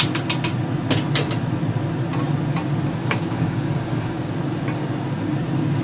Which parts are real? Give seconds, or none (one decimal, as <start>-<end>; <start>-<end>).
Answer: 0.0-3.0; 4.3-5.8